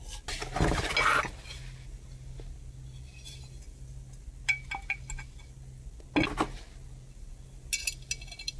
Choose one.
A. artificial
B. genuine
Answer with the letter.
B